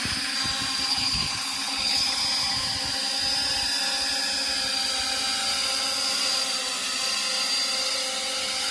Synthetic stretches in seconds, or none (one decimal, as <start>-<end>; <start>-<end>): 0.9-2.2